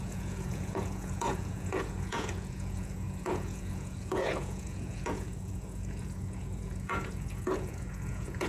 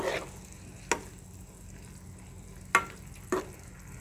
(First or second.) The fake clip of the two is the first